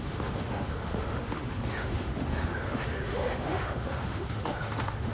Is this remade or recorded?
remade